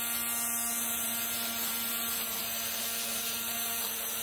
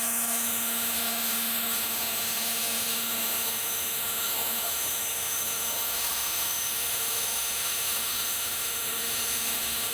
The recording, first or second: first